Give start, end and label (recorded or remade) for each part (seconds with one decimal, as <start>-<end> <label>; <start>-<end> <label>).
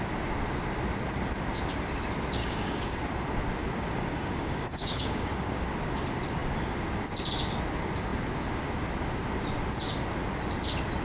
0.0-2.4 recorded; 2.4-3.0 remade; 3.0-3.6 recorded; 3.6-5.7 remade; 5.7-11.0 recorded